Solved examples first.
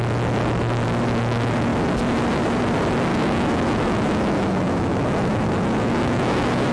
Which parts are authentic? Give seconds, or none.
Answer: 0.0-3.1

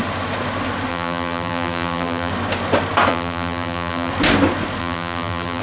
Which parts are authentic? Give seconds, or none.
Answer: 0.0-0.9; 2.3-3.1; 4.1-4.8

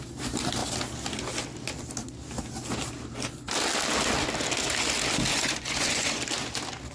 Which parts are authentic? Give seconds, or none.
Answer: 0.0-5.3; 6.2-6.9